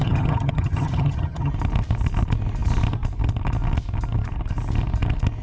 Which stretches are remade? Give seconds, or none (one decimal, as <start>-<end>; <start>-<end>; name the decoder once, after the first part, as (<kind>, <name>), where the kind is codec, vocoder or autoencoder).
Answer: 0.0-1.5 (vocoder, HiFi-GAN)